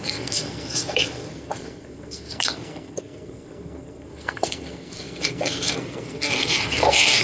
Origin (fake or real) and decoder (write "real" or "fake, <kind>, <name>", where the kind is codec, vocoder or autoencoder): fake, codec, SNAC